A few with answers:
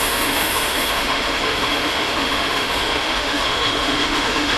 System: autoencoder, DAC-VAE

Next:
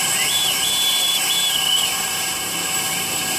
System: vocoder, BigVGAN v2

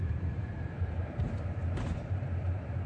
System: vocoder, BigVGAN v2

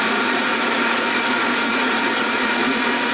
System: vocoder, Vocos